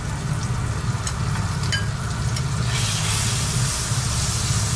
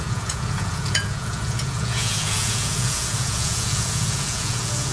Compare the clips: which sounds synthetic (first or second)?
second